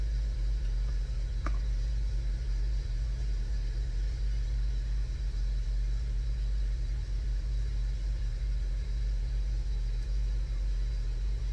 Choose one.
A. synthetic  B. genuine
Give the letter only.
A